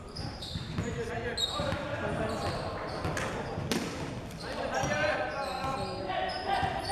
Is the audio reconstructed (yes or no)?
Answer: no